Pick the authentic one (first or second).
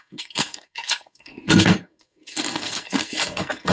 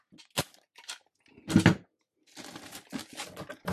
second